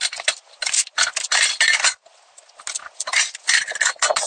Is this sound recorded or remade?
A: recorded